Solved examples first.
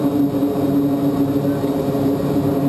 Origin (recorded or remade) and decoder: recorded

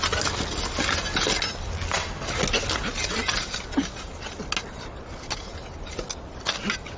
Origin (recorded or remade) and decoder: recorded